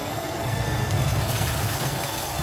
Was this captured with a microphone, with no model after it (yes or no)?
no